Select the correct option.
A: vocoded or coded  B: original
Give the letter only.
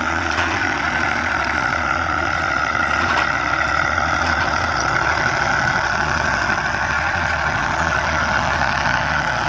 A